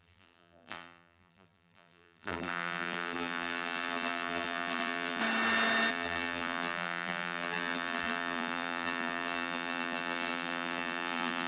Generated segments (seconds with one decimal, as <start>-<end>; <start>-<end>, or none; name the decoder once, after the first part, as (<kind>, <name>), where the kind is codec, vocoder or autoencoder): 0.0-5.2 (vocoder, BigVGAN v2); 5.9-11.5